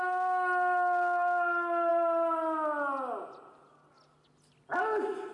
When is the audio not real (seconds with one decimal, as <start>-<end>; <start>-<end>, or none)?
none